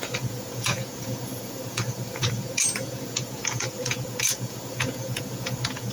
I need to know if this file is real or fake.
fake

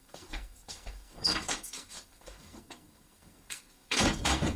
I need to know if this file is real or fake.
fake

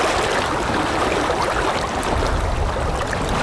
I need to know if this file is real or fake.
real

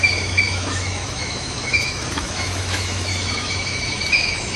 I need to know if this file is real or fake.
fake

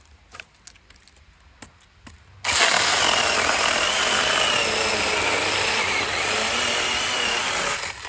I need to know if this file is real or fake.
real